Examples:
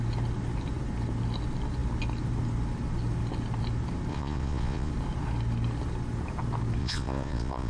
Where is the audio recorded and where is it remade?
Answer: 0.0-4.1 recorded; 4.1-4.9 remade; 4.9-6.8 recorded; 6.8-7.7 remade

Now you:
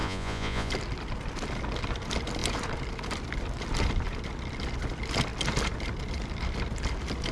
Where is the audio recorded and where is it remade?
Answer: 0.0-0.7 remade; 0.7-7.3 recorded